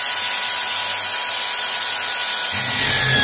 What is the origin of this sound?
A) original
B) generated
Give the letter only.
A